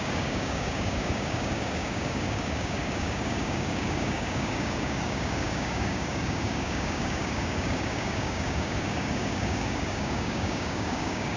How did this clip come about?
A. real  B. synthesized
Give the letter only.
B